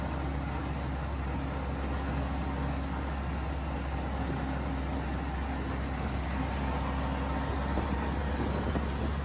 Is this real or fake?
real